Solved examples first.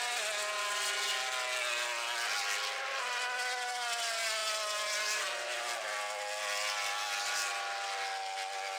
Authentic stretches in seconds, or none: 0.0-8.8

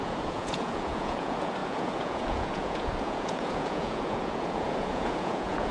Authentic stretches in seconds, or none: none